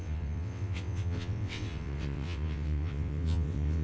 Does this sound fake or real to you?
fake